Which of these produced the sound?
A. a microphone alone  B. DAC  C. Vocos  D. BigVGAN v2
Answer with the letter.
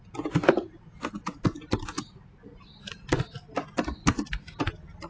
A